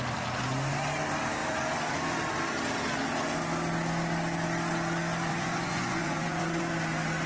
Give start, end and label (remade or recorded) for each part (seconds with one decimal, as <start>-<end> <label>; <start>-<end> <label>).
0.0-5.3 recorded; 5.3-6.6 remade; 6.6-7.3 recorded